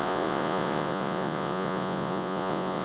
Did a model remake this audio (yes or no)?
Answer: yes